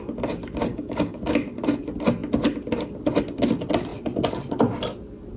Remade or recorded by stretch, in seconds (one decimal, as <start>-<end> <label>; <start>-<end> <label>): 0.0-0.7 recorded; 0.7-1.2 remade; 1.2-5.4 recorded